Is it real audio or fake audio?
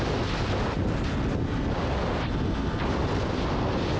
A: real